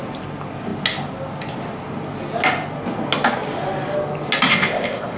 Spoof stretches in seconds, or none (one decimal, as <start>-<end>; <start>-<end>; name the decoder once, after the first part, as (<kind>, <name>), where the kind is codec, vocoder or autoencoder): 4.5-5.2 (codec, ZipCodec)